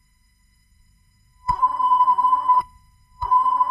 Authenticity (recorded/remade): remade